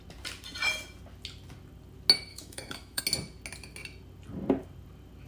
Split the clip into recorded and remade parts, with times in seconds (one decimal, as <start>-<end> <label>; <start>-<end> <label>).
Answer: 0.0-2.3 recorded; 2.3-3.0 remade; 3.0-5.3 recorded